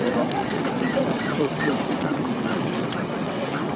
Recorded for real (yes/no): no